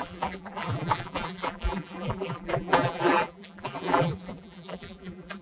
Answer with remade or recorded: remade